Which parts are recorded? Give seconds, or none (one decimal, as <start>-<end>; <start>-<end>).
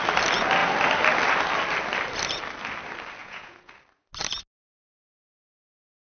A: 0.0-3.2; 3.7-6.1